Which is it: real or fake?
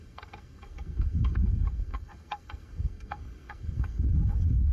fake